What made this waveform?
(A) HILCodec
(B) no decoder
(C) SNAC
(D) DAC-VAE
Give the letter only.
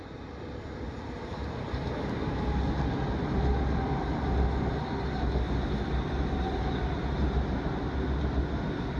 B